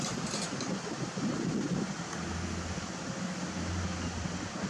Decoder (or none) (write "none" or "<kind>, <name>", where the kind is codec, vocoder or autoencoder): none